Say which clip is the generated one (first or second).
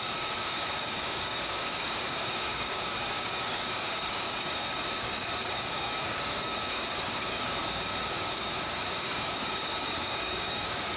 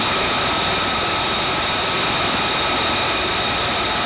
first